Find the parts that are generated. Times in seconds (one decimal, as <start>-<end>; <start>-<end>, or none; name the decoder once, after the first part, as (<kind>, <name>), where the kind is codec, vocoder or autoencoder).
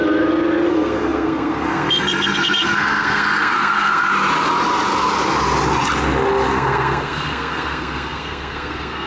0.7-4.1 (codec, SNAC); 6.5-9.1